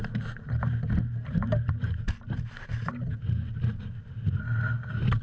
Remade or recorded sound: recorded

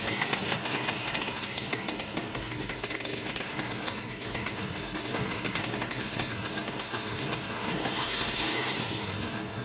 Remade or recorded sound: remade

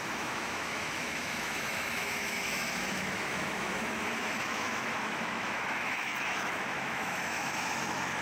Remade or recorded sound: remade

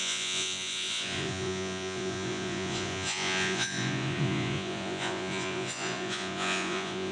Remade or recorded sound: remade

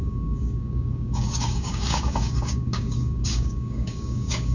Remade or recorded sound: remade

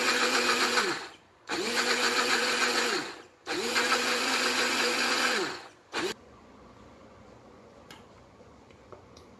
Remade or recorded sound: remade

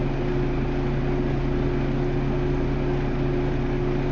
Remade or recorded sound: recorded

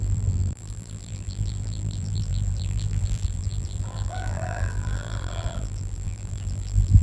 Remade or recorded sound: remade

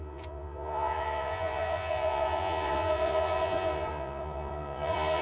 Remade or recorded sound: remade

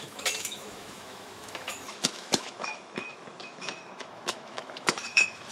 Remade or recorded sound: remade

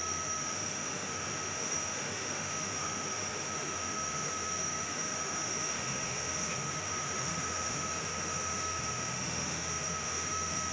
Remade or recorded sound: remade